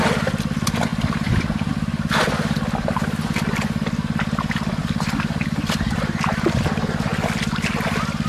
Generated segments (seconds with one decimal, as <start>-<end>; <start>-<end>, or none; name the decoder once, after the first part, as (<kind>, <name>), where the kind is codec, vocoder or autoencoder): none

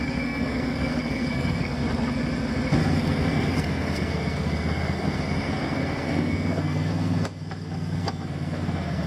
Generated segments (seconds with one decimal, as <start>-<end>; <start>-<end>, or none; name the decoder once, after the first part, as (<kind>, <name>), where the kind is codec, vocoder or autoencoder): 0.0-1.8 (codec, SNAC); 2.8-9.1

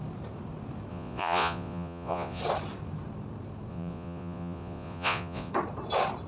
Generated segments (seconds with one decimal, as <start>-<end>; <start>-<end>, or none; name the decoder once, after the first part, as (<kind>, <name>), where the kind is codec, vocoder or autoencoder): 0.9-2.4 (vocoder, Vocos); 3.7-5.5

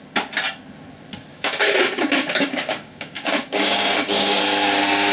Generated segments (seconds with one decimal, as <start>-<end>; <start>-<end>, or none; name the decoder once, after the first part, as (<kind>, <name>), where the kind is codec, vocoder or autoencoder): 1.3-4.4 (codec, DAC)

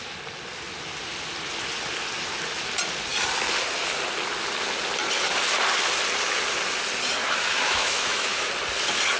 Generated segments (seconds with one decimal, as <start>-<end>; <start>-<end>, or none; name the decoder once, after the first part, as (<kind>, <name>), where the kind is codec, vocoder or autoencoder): 7.2-8.5 (autoencoder, DAC-VAE)

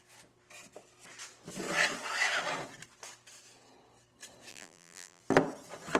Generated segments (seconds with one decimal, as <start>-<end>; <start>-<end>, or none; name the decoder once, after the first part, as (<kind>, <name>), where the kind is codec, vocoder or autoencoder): 4.5-5.2 (vocoder, BigVGAN v2)